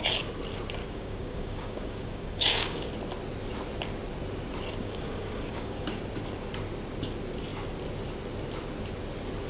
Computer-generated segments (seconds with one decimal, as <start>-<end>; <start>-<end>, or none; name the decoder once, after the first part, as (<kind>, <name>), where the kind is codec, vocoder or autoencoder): 0.8-2.9 (codec, DAC); 4.8-6.0